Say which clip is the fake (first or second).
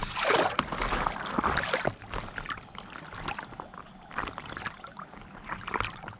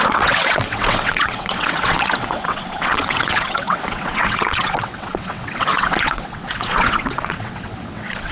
second